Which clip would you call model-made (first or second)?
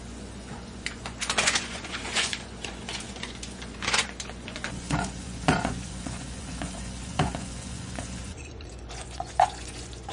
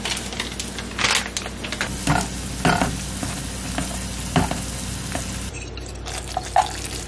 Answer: first